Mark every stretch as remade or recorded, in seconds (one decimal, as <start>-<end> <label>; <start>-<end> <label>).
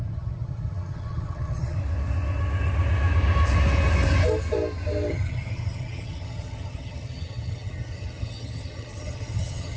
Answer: 0.0-1.8 remade; 1.8-5.1 recorded; 5.1-9.8 remade